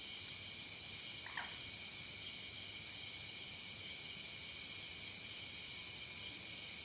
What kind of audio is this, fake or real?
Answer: real